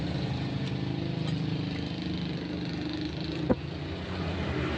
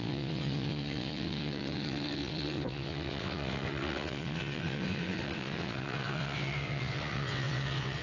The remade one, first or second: second